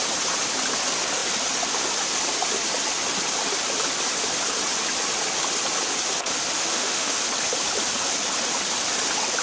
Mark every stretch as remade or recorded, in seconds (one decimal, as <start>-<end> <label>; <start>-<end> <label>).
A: 0.0-6.6 recorded; 6.6-7.2 remade; 7.2-9.4 recorded

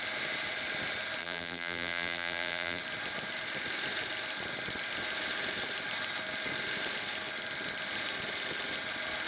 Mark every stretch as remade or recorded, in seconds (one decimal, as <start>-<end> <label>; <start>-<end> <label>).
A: 0.0-1.2 recorded; 1.2-2.8 remade; 2.8-9.3 recorded

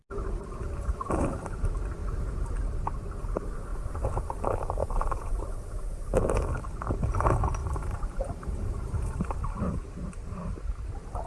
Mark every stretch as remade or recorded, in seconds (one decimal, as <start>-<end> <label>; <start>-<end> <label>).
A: 0.0-2.0 recorded; 2.0-2.5 remade; 2.5-4.8 recorded; 4.8-5.3 remade; 5.3-7.6 recorded; 7.6-9.4 remade; 9.4-11.3 recorded

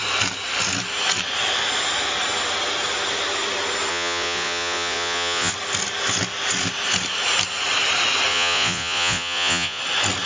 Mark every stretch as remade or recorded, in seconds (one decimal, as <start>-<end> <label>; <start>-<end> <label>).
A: 0.0-3.9 recorded; 3.9-5.5 remade; 5.5-8.3 recorded; 8.3-9.8 remade; 9.8-10.3 recorded

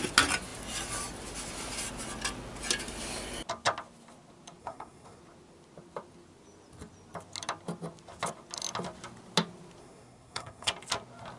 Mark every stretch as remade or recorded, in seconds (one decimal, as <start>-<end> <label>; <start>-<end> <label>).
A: 0.0-4.6 recorded; 4.6-5.2 remade; 5.2-9.8 recorded; 9.8-10.7 remade; 10.7-11.4 recorded

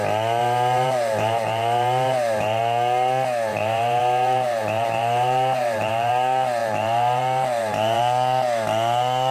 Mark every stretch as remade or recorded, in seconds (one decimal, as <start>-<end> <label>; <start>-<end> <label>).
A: 0.0-0.4 recorded; 0.4-2.6 remade; 2.6-3.5 recorded; 3.5-6.1 remade; 6.1-6.6 recorded; 6.6-8.0 remade; 8.0-9.3 recorded

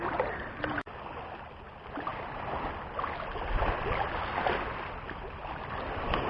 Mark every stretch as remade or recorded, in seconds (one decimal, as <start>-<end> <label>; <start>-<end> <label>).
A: 0.0-6.3 recorded

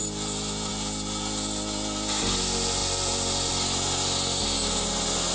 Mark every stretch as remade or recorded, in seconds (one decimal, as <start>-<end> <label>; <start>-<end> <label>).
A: 0.0-5.3 recorded